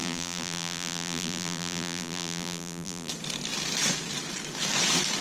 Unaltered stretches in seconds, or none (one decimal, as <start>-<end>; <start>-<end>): 3.1-5.2